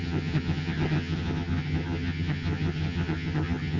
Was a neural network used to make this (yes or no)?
yes